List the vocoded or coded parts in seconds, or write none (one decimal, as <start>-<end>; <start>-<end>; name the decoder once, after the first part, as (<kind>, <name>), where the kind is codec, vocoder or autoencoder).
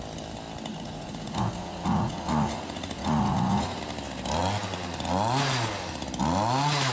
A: 0.7-3.8 (vocoder, Vocos)